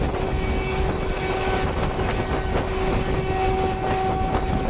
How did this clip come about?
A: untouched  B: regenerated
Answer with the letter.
A